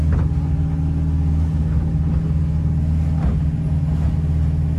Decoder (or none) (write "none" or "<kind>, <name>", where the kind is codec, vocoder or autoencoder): none